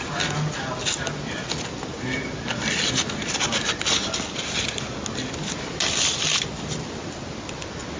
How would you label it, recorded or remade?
recorded